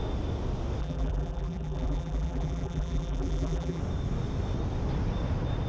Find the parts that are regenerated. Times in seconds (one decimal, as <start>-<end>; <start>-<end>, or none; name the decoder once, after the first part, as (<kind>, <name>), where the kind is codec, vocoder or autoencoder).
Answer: 0.8-3.8 (vocoder, BigVGAN v2)

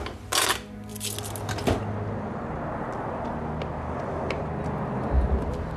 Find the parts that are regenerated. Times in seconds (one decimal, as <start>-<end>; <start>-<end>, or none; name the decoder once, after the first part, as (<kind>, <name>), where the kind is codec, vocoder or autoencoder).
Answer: none

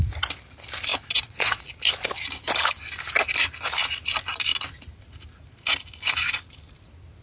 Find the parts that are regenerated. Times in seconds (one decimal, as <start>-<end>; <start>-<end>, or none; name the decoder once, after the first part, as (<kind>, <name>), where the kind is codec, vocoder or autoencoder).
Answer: 0.9-1.7 (vocoder, Vocos)

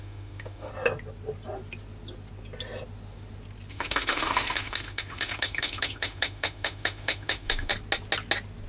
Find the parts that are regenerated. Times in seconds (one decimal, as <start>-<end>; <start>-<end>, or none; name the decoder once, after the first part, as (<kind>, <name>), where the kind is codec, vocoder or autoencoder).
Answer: 0.0-0.7 (autoencoder, DAC-VAE); 3.7-7.7

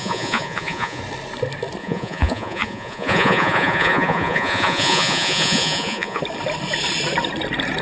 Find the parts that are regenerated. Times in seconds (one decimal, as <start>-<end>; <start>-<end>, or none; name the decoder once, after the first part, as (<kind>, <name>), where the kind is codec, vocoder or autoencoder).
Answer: 0.0-1.0 (vocoder, Vocos); 1.8-6.2

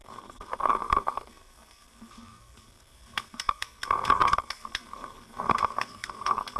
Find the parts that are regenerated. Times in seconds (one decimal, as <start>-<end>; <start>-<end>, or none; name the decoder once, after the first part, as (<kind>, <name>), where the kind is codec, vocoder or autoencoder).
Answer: 0.0-6.6 (codec, SNAC)